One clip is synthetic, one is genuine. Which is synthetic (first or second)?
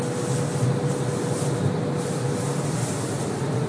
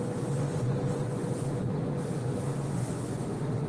second